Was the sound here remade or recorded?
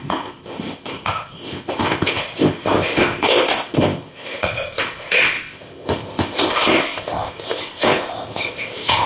remade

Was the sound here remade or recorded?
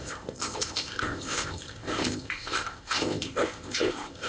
remade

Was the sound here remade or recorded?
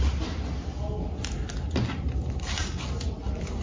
recorded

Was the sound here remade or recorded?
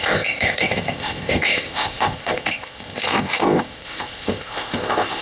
remade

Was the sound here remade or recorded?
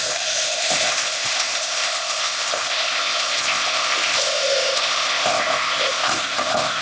remade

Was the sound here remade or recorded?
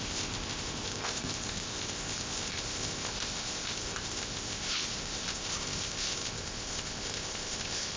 remade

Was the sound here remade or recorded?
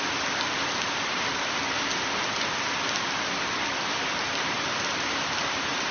recorded